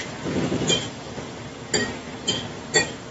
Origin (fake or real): fake